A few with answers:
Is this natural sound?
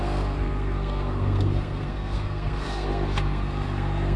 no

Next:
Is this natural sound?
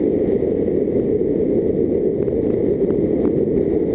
yes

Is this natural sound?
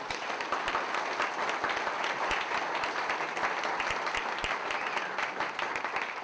yes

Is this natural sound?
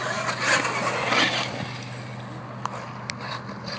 yes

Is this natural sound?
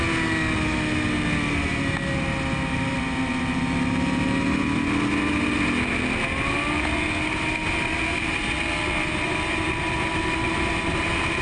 yes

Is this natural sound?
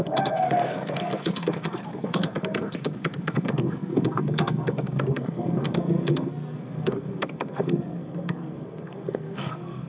no